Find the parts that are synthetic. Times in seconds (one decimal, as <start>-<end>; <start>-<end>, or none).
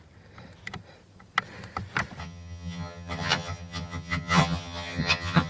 2.2-5.5